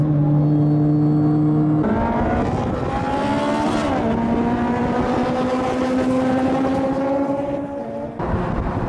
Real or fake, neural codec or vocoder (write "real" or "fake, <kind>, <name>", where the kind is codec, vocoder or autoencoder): real